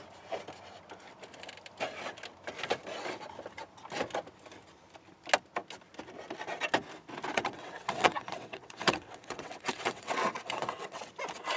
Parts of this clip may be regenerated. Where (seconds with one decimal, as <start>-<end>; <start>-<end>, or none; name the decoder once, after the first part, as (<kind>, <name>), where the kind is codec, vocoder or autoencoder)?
7.3-11.1 (vocoder, WaveNeXt)